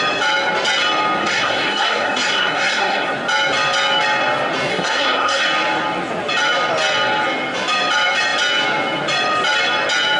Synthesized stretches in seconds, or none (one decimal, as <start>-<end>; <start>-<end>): 1.2-3.1; 4.7-5.4